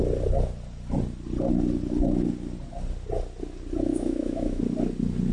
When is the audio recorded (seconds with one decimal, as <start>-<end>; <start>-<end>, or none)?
0.0-3.9; 4.6-5.3

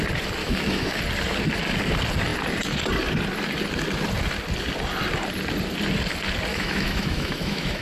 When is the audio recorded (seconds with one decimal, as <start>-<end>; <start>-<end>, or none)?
0.0-0.4; 1.0-6.5

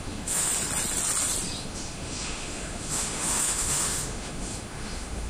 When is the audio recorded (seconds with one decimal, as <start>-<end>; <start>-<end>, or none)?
0.5-1.6

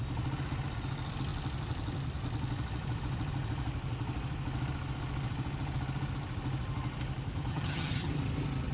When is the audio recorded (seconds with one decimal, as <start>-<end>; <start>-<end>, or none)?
0.0-7.5; 8.1-8.7

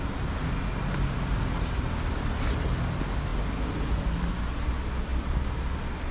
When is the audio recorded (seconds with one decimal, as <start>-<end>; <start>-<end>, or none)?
0.0-6.1

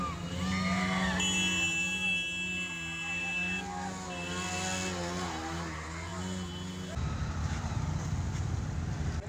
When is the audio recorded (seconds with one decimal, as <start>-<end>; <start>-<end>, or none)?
0.0-9.3